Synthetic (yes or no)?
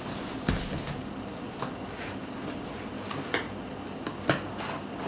no